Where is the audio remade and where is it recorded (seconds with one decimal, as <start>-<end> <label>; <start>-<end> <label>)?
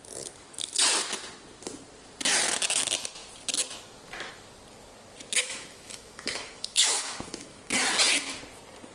0.0-5.4 recorded; 5.4-7.6 remade; 7.6-8.9 recorded